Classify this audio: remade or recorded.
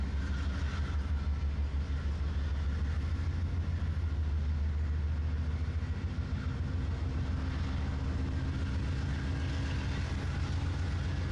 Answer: recorded